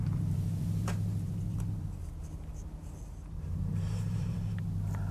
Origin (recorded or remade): remade